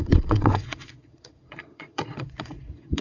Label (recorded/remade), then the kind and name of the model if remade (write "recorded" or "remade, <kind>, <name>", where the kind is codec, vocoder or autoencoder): remade, vocoder, Vocos